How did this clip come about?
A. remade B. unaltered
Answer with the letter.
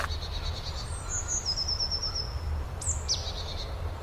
B